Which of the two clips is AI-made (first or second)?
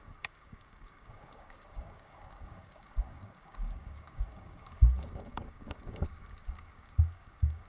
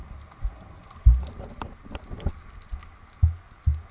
first